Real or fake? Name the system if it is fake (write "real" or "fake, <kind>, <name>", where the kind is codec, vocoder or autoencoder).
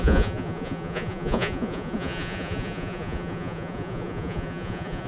fake, vocoder, Vocos